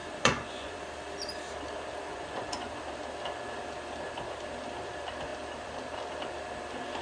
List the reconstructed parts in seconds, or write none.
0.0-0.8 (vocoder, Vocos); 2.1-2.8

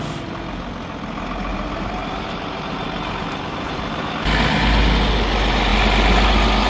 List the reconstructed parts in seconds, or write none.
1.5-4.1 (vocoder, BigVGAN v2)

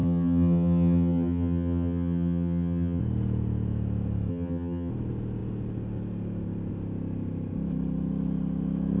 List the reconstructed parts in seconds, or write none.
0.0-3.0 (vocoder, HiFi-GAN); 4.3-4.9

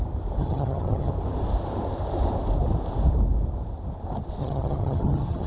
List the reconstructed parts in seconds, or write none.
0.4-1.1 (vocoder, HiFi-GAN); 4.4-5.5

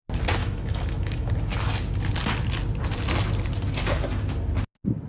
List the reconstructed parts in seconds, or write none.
0.4-1.3 (autoencoder, DAC-VAE)

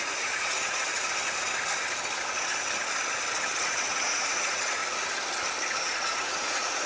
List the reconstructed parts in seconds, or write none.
0.0-0.9 (vocoder, Vocos); 3.6-4.8; 5.8-6.9

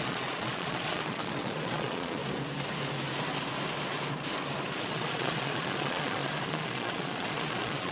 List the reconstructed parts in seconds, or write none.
0.0-2.2 (vocoder, Vocos); 4.8-7.9